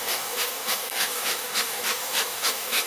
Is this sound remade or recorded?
remade